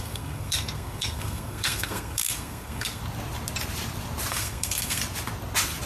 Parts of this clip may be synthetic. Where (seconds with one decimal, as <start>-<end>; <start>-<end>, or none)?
0.0-3.0; 4.3-5.0